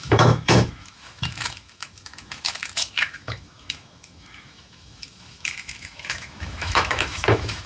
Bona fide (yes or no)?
no